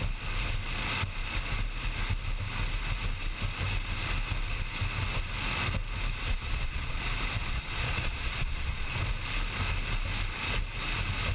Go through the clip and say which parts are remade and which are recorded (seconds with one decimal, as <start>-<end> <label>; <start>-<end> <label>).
0.0-6.3 recorded; 6.3-7.0 remade; 7.0-7.4 recorded; 7.4-9.0 remade; 9.0-11.3 recorded